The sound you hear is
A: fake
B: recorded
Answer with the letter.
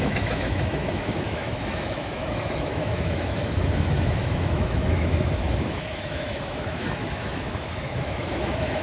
A